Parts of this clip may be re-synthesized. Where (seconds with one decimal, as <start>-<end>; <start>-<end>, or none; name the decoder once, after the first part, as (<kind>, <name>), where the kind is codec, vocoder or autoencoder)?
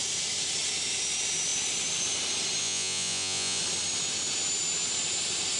2.6-3.6 (vocoder, Vocos)